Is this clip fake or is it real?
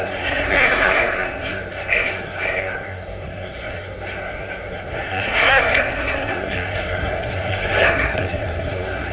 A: fake